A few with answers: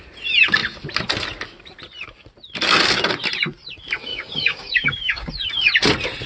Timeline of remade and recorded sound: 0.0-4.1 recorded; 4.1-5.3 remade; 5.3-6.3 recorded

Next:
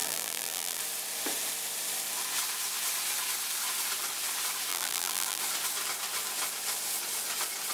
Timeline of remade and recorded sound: 0.0-0.8 remade; 0.8-4.7 recorded; 4.7-5.4 remade; 5.4-7.7 recorded

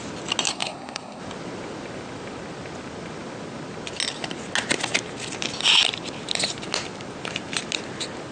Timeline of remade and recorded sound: 0.0-0.5 recorded; 0.5-1.2 remade; 1.2-8.3 recorded

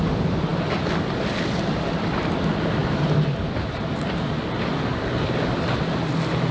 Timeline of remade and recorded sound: 0.0-6.5 recorded

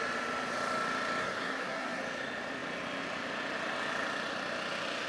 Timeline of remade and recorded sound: 0.0-1.2 recorded; 1.2-2.0 remade; 2.0-5.1 recorded

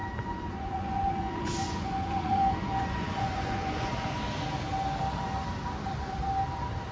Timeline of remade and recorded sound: 0.0-3.9 remade; 3.9-6.9 recorded

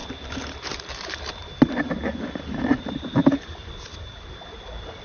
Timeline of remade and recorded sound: 0.0-2.0 remade; 2.0-3.2 recorded; 3.2-3.7 remade; 3.7-5.0 recorded

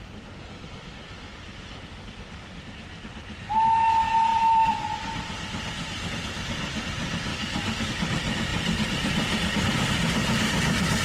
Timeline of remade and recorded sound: 0.0-7.3 recorded; 7.3-7.9 remade; 7.9-11.0 recorded